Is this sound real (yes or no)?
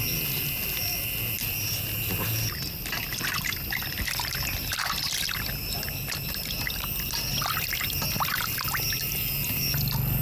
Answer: yes